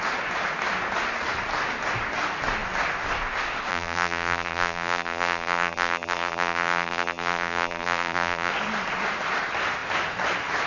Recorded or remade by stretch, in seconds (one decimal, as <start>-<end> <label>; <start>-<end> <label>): 0.0-3.7 recorded; 3.7-8.5 remade; 8.5-10.7 recorded